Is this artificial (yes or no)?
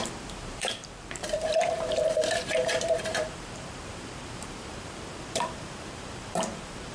yes